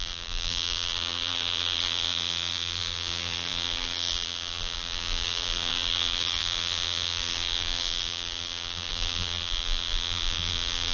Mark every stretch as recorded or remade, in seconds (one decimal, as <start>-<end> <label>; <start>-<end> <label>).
0.0-10.9 remade